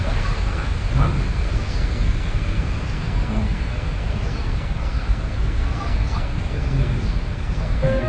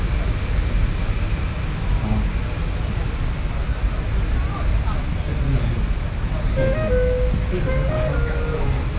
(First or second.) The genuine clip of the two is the second